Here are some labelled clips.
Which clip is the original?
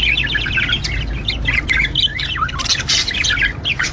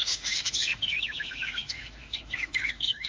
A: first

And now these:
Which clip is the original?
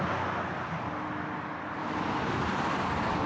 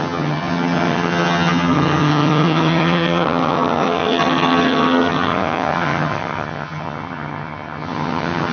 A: first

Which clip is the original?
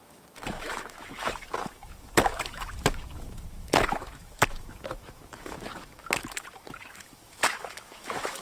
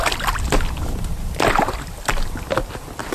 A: second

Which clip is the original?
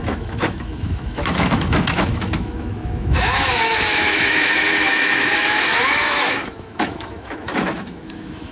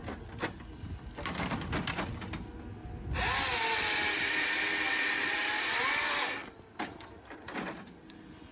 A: second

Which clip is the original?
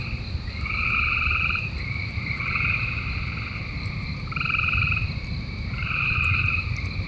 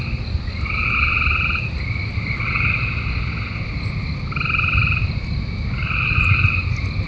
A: second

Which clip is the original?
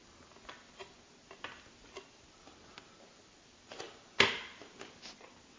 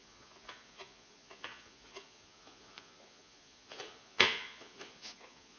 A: first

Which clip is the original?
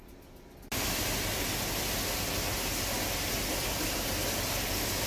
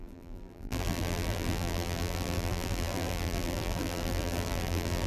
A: first